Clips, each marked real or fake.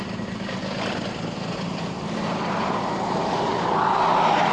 real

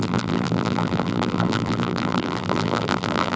fake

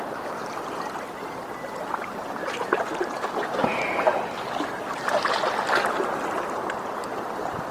real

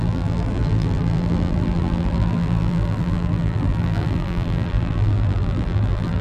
fake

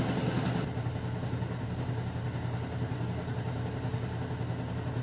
real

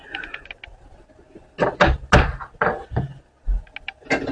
real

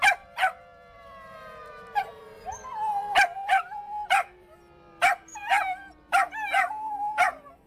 fake